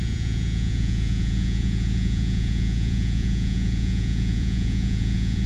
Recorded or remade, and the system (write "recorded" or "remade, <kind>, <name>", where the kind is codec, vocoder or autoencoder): remade, vocoder, Vocos